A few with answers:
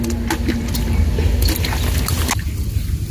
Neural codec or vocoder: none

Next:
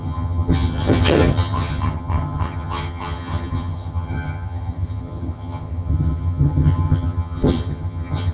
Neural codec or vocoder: vocoder, HiFi-GAN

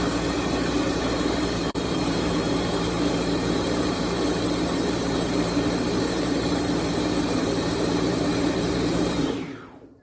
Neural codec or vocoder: vocoder, BigVGAN v2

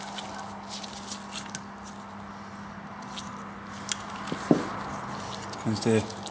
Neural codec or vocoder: none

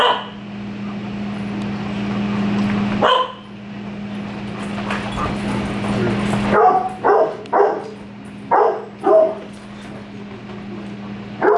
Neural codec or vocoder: none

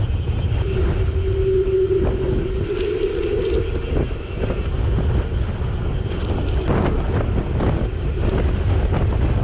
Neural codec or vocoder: none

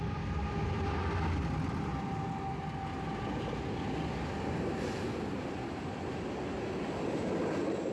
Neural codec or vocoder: none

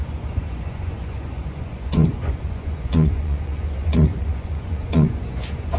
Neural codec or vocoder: vocoder, Vocos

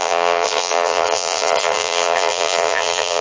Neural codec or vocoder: vocoder, BigVGAN v2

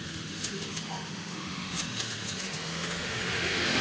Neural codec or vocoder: autoencoder, DAC-VAE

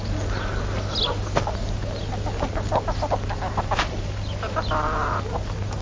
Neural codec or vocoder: none